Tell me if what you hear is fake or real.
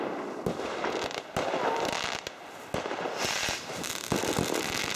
real